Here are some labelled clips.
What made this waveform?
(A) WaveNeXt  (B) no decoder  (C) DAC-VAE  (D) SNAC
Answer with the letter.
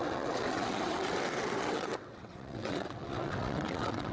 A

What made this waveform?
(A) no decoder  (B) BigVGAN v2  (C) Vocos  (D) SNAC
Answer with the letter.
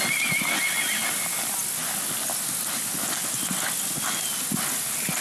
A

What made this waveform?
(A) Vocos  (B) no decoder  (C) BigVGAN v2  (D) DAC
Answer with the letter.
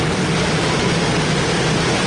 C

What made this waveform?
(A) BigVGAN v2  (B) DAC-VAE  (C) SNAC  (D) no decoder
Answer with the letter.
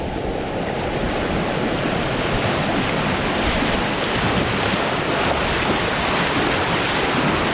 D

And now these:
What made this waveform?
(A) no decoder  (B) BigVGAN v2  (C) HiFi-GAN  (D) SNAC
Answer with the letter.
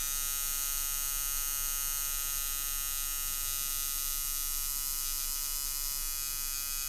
A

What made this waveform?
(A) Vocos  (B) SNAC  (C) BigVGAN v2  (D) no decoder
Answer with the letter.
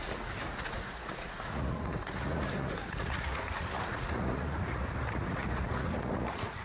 A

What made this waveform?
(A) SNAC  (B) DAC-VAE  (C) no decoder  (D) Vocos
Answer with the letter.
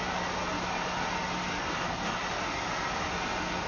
C